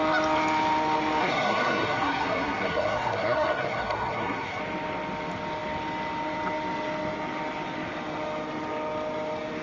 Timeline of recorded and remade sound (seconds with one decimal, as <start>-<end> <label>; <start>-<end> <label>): 0.0-1.2 recorded; 1.2-4.6 remade; 4.6-9.6 recorded

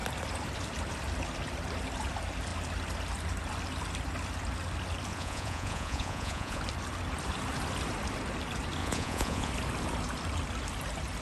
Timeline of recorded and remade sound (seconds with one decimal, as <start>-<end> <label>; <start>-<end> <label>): 0.0-5.1 recorded; 5.1-6.6 remade; 6.6-8.8 recorded; 8.8-9.5 remade; 9.5-11.2 recorded

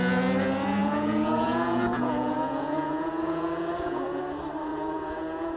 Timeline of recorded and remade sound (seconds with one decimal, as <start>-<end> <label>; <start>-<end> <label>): 0.0-0.8 recorded; 0.8-4.2 remade; 4.2-4.7 recorded; 4.7-5.6 remade

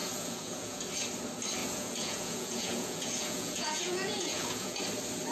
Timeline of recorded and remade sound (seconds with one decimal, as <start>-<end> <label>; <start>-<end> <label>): 0.0-0.8 remade; 0.8-1.6 recorded; 1.6-4.8 remade; 4.8-5.3 recorded

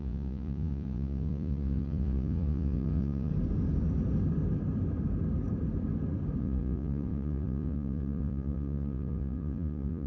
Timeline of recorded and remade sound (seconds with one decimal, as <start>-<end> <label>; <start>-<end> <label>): 0.0-3.3 remade; 3.3-6.4 recorded; 6.4-10.1 remade

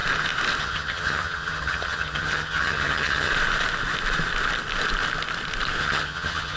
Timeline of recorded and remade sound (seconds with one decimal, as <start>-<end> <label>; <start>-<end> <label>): 0.0-0.6 recorded; 0.6-3.3 remade; 3.3-5.8 recorded; 5.8-6.6 remade

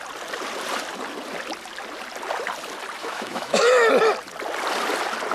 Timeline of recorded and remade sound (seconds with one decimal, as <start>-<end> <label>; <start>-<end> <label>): 0.0-3.0 recorded; 3.0-3.9 remade; 3.9-5.3 recorded

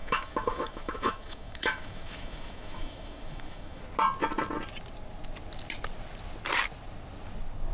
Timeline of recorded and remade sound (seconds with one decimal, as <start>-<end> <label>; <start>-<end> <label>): 0.0-3.8 remade; 3.8-7.7 recorded